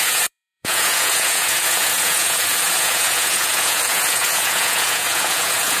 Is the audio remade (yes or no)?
yes